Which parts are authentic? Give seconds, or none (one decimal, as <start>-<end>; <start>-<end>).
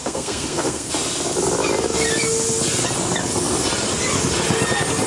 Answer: 0.9-5.1